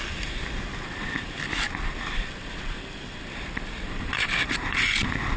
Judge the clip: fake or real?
real